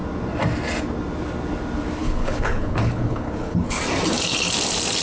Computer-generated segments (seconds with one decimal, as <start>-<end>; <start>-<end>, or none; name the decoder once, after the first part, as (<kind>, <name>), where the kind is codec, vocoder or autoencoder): 2.0-3.8 (codec, HILCodec)